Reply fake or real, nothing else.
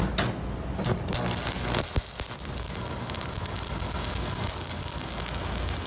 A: real